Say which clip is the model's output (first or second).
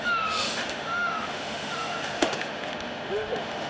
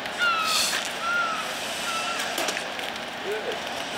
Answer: first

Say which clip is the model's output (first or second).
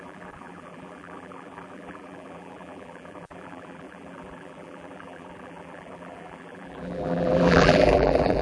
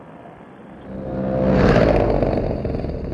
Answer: first